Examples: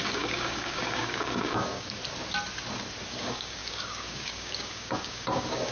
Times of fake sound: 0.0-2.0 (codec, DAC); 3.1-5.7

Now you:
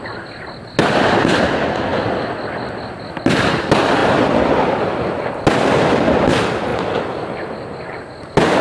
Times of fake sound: none

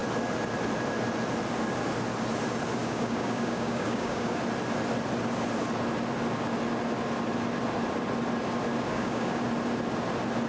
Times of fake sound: 2.8-4.4 (codec, DAC); 8.9-9.4

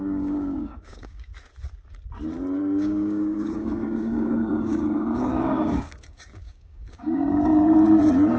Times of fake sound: 0.0-1.3 (codec, DAC); 2.6-7.5

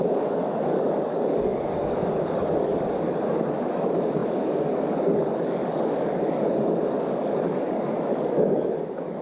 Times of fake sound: 0.0-9.2 (codec, DAC)

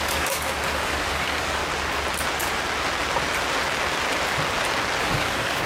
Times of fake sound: 0.0-1.6 (codec, DAC); 5.0-5.7

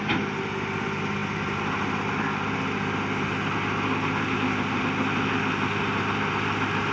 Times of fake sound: none